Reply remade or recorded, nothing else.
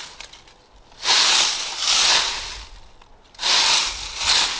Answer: recorded